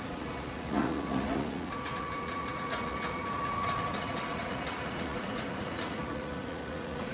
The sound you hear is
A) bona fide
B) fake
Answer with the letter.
B